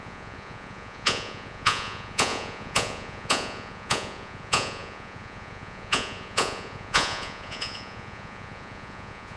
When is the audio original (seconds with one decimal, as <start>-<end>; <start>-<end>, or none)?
none